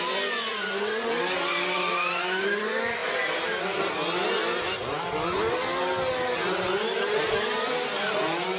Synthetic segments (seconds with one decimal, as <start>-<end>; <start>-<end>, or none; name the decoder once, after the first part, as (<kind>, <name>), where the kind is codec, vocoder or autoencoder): 0.5-1.2 (vocoder, BigVGAN v2); 7.2-8.2